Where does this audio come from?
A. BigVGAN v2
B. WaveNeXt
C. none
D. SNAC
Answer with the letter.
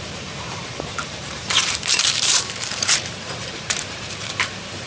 A